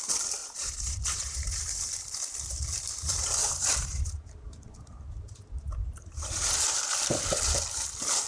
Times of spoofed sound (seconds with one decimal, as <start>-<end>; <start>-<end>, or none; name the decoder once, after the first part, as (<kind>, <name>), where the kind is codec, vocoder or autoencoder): 0.4-1.5 (vocoder, BigVGAN v2); 3.4-6.6